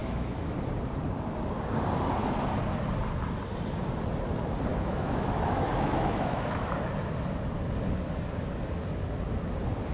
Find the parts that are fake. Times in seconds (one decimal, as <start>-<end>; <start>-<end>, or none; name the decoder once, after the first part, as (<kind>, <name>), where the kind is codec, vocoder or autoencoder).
0.0-0.6 (autoencoder, DAC-VAE); 4.7-6.7